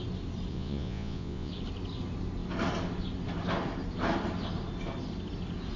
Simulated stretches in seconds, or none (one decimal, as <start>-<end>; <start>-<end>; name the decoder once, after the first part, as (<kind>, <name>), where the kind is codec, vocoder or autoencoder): 0.5-1.5 (vocoder, Vocos)